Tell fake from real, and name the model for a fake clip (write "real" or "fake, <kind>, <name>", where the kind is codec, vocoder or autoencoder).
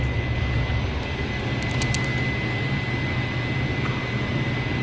real